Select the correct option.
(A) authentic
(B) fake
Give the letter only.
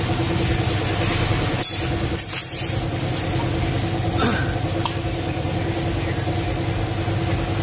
A